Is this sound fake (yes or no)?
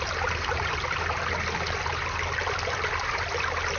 no